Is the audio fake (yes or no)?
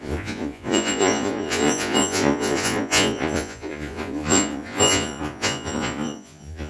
yes